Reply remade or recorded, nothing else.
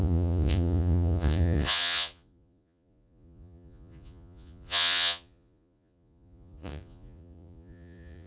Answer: remade